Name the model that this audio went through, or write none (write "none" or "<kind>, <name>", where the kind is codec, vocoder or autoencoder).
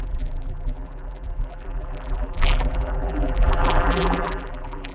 vocoder, BigVGAN v2